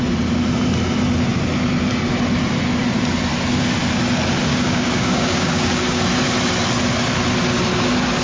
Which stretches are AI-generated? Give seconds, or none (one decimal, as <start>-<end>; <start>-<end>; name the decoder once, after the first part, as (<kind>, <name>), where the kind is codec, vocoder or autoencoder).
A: 4.5-6.0 (codec, DAC)